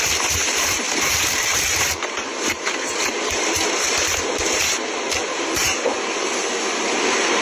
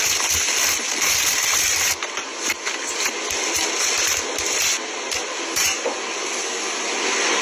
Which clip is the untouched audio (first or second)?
second